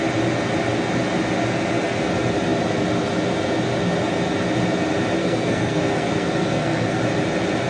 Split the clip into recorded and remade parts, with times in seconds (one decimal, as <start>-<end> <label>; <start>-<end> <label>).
0.0-5.2 recorded; 5.2-7.0 remade; 7.0-7.7 recorded